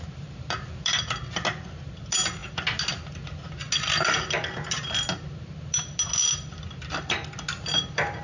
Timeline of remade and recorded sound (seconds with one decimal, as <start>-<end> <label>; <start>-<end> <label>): 0.0-8.2 recorded